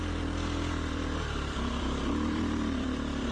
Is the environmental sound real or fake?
fake